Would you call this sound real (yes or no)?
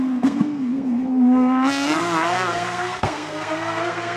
no